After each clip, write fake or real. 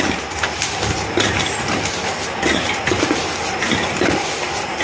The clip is real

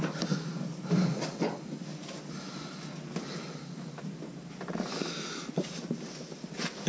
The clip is real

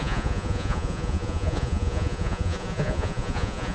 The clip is fake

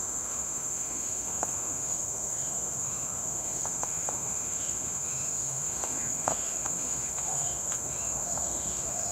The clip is fake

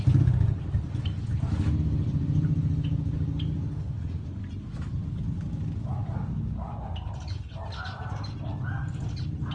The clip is real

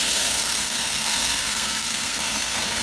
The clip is fake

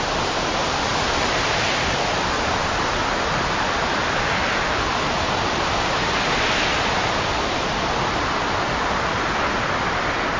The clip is fake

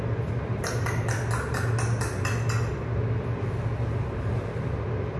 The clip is real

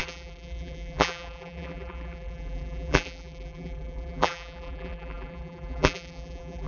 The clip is fake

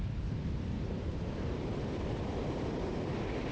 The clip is fake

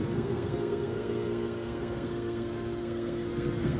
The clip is fake